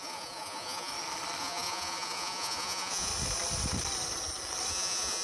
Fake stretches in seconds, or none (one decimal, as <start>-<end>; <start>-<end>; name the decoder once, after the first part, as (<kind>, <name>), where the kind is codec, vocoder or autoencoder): 0.0-0.9 (vocoder, Vocos); 1.4-3.1; 4.7-5.2